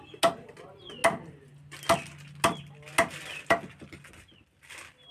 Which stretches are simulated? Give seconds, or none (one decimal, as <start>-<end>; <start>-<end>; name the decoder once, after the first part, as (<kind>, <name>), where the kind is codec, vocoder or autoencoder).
none